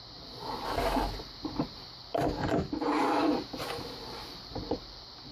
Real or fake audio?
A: fake